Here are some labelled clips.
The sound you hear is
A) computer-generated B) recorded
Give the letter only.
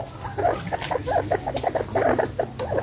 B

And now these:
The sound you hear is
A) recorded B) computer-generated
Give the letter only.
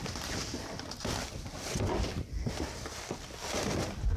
B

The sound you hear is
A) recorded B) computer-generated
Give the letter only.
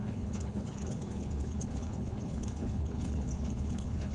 B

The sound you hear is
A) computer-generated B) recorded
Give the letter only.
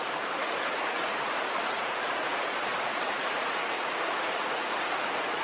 A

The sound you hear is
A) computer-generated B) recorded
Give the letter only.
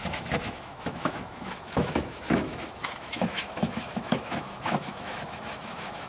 A